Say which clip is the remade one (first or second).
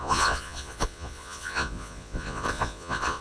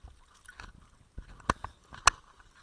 first